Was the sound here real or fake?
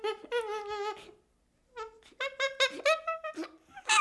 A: real